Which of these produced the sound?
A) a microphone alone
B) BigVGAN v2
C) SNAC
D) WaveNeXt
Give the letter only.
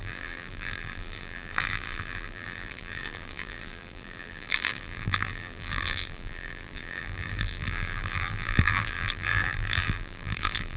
B